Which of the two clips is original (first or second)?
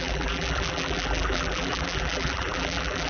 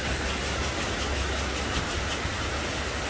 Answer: second